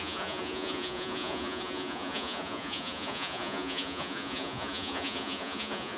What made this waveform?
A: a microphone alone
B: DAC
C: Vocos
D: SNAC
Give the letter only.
C